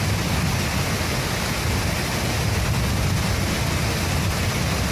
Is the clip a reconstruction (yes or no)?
no